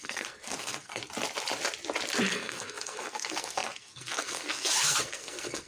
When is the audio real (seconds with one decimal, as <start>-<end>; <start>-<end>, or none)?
1.0-2.3